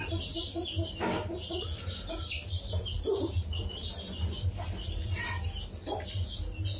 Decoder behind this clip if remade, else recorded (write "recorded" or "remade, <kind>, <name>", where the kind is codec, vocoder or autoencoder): recorded